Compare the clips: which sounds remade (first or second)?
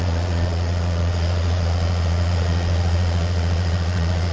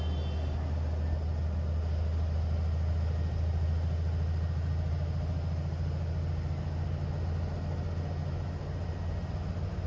first